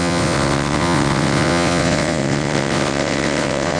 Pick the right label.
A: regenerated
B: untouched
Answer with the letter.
A